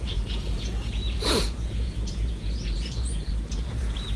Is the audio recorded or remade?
remade